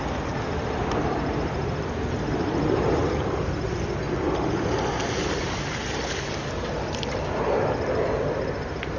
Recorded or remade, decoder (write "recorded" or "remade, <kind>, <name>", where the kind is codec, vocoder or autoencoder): recorded